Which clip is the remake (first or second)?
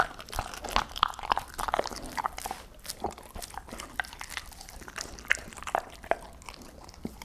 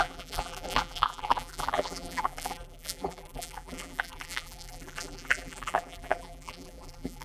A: second